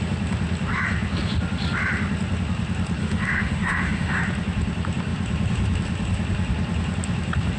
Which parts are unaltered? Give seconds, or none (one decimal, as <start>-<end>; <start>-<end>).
0.0-3.0; 4.2-7.6